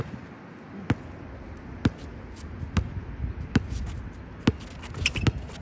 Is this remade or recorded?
recorded